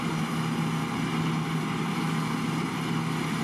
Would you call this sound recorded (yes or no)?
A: yes